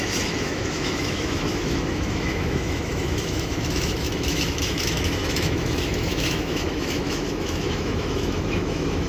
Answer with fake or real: fake